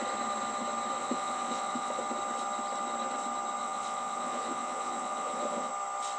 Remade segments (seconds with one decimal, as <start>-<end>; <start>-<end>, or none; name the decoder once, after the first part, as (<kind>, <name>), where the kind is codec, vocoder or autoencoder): 1.0-2.0 (vocoder, Vocos); 3.6-5.7